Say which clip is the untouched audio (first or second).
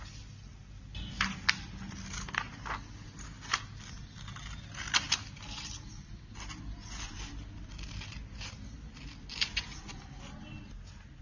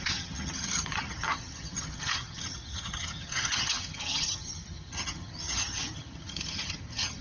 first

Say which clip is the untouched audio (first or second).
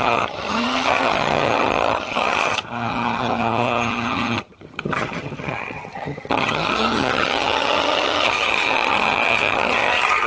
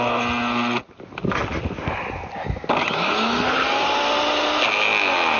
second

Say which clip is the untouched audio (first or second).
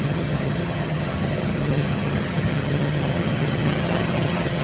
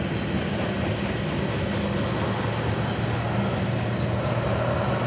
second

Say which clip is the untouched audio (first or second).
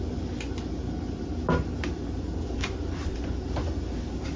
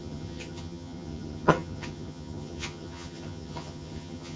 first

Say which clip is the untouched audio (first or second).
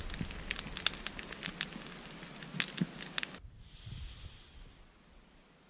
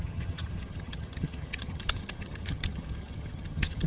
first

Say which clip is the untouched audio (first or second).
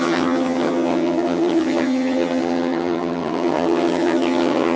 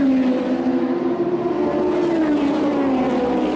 second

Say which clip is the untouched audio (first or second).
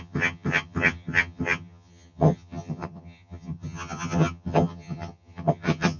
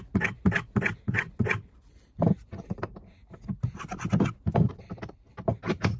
second